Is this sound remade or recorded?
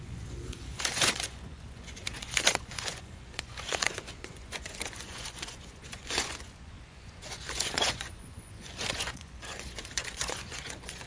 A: remade